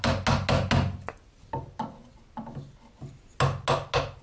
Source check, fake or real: real